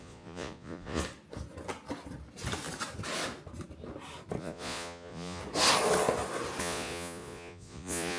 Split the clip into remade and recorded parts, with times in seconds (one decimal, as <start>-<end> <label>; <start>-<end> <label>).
0.0-1.0 remade; 1.0-4.4 recorded; 4.4-5.4 remade; 5.4-6.6 recorded; 6.6-8.2 remade